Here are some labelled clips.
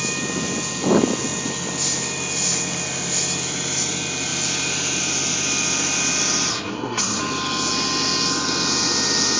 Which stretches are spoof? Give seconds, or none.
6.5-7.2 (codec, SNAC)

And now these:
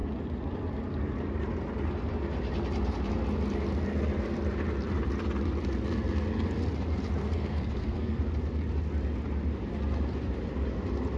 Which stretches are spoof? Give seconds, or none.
7.2-8.2 (codec, SNAC)

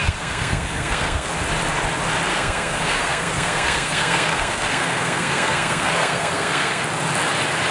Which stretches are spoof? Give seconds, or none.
0.0-1.3 (codec, SNAC); 2.3-6.8

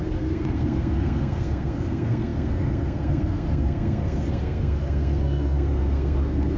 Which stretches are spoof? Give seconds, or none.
0.0-6.6 (codec, SNAC)

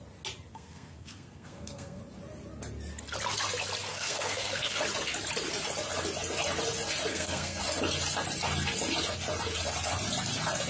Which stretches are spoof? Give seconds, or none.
0.5-2.0 (codec, SNAC); 3.9-4.8; 7.1-7.6

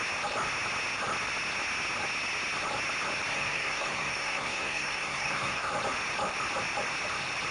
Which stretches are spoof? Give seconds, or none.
3.3-5.7 (codec, SNAC)

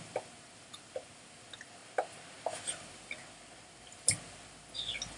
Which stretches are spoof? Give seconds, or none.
none